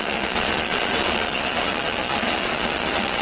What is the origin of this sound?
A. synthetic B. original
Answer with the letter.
A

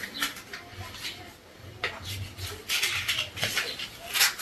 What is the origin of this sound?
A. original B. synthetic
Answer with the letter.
A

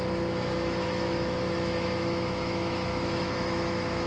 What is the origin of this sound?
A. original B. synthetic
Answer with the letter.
B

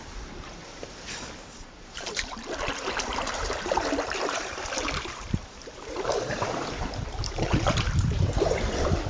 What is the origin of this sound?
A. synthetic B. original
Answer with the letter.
A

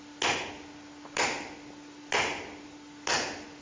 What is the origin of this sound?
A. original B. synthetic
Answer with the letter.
A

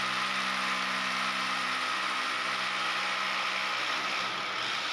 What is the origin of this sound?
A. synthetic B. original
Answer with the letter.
B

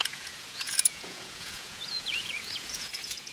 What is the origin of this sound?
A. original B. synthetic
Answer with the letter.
B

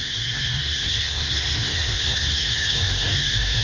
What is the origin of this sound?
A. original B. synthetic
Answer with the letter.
B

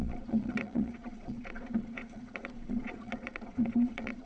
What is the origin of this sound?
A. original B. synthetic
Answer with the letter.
B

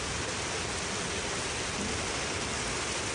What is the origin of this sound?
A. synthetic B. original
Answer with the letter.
B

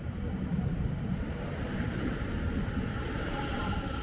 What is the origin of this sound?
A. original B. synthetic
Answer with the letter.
B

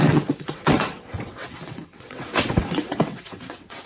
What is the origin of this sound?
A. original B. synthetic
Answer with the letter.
B